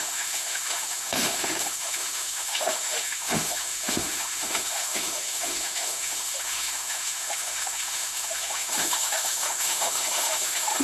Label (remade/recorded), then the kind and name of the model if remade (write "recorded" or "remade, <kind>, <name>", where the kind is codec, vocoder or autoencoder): remade, autoencoder, DAC-VAE